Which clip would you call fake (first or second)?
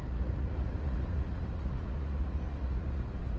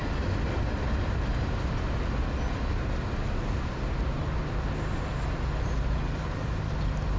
first